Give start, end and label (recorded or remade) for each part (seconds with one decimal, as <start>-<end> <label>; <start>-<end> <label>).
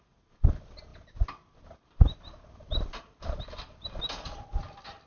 0.0-5.1 recorded